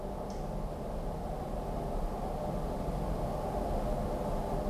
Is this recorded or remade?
recorded